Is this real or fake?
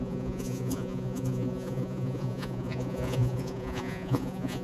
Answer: fake